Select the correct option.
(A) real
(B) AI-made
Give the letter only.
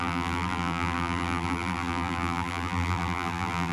B